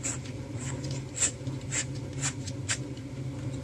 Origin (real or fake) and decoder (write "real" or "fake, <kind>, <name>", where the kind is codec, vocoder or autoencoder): real